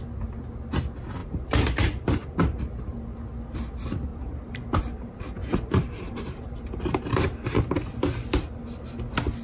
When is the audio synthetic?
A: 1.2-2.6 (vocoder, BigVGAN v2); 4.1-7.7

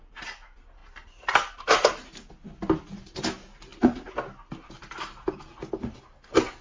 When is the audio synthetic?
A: none

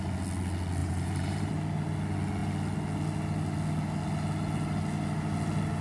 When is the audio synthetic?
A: 0.8-1.5 (vocoder, BigVGAN v2)

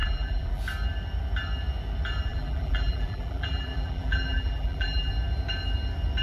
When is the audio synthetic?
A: 0.0-0.6 (vocoder, BigVGAN v2); 2.3-5.1

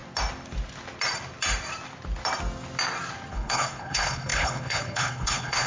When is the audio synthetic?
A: 3.3-5.7 (codec, HILCodec)

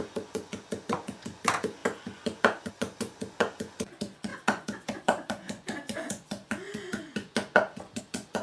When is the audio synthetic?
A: 0.0-8.4 (vocoder, Vocos)

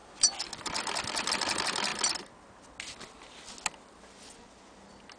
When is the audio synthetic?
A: 0.0-1.9 (vocoder, BigVGAN v2)